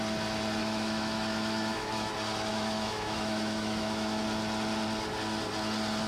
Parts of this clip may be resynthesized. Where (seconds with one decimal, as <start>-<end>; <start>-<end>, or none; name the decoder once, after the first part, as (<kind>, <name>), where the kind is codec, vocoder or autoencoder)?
0.6-2.1 (autoencoder, DAC-VAE); 2.5-4.2